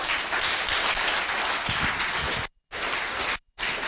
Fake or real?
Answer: fake